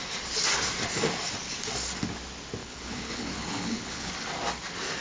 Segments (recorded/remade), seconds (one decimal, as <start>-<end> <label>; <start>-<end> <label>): 0.0-2.6 recorded; 2.6-4.1 remade; 4.1-5.0 recorded